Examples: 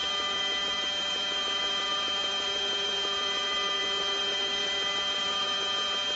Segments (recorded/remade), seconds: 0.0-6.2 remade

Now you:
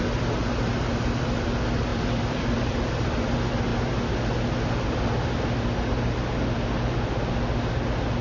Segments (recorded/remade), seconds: 0.0-3.7 remade; 3.7-8.2 recorded

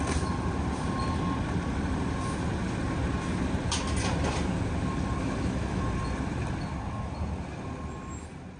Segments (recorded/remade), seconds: 0.0-5.2 recorded; 5.2-5.8 remade; 5.8-8.6 recorded

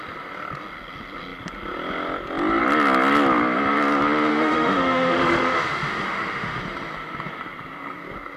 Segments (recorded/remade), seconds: 0.0-4.3 recorded; 4.3-6.6 remade; 6.6-8.4 recorded